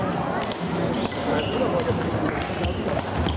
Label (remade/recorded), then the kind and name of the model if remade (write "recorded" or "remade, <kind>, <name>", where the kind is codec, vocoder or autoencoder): recorded